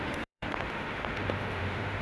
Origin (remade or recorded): remade